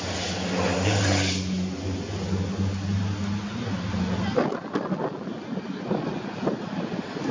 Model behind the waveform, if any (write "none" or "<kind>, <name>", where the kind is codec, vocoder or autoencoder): none